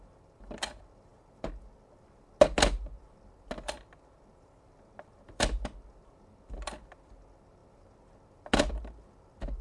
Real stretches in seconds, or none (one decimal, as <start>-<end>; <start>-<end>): 0.0-9.6